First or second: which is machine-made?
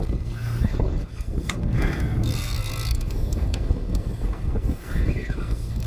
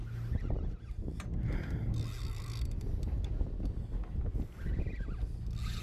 first